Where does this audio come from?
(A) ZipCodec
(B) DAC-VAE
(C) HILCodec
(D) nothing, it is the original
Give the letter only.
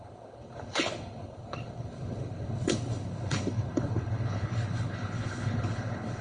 C